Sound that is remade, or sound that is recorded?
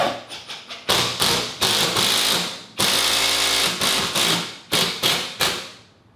recorded